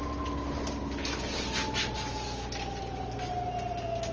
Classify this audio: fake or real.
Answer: real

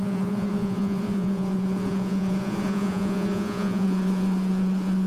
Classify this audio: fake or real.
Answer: fake